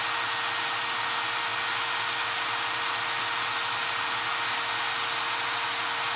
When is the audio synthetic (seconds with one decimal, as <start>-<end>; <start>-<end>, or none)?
none

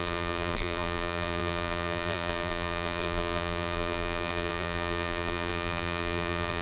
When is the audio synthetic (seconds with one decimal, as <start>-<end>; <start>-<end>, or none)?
0.0-6.6

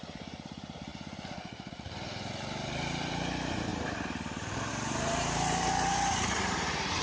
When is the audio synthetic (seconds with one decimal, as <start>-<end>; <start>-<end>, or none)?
0.0-0.9; 1.7-3.7; 4.7-7.0

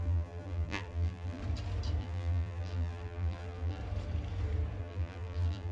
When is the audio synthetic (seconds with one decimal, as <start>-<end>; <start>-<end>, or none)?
0.0-1.4; 2.0-3.8; 4.8-5.7

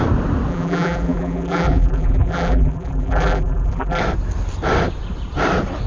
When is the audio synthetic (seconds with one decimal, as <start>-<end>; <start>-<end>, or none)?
0.5-4.0

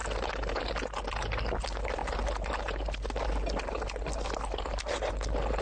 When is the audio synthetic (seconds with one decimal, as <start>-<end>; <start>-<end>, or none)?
none